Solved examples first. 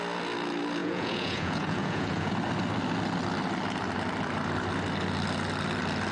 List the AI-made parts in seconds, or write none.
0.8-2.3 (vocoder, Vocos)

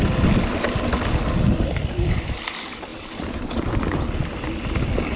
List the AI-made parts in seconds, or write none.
none

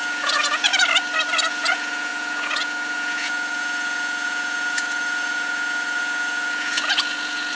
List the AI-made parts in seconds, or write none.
0.0-0.7 (vocoder, Vocos); 1.5-7.5